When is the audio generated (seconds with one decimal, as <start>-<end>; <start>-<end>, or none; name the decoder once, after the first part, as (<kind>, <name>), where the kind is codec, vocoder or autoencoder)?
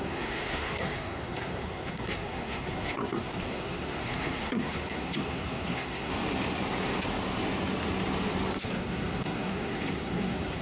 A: 0.0-6.1 (codec, SNAC); 8.6-10.6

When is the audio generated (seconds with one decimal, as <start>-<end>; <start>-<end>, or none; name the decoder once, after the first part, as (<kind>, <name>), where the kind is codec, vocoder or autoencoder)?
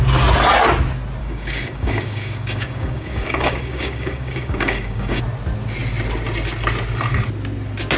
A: 1.2-5.2 (codec, DAC)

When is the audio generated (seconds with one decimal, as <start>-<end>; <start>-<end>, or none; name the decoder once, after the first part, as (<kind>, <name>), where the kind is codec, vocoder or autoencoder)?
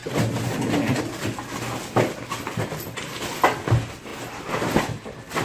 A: 4.1-5.0 (vocoder, BigVGAN v2)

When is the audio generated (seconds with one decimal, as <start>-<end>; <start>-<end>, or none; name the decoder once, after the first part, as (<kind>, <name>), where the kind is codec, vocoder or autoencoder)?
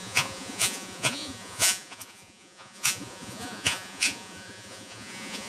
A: 0.0-5.5 (vocoder, Vocos)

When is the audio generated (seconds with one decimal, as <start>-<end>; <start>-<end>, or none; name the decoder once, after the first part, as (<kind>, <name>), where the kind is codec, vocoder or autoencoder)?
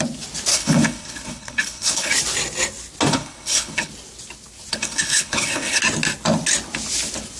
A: 0.5-2.1 (codec, HILCodec); 3.1-3.9; 4.7-5.8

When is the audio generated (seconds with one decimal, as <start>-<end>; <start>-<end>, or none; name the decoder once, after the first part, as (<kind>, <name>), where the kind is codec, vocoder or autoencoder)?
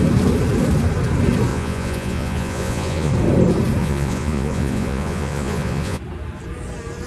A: 1.5-3.1 (vocoder, Vocos); 3.8-6.0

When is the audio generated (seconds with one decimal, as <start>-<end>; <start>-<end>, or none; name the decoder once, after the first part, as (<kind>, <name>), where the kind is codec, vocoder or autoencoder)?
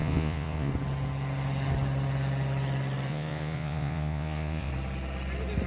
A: 0.0-0.7 (vocoder, Vocos); 3.1-4.7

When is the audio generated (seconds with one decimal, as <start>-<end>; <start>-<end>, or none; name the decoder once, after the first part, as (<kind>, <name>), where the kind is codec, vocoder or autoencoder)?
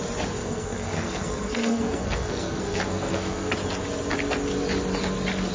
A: 0.4-3.5 (codec, SNAC)